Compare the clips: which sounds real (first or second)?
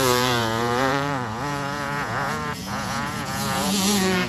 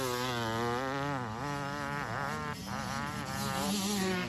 second